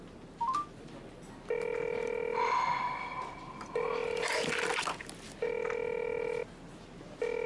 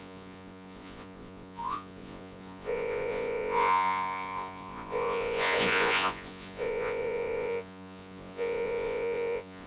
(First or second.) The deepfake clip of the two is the second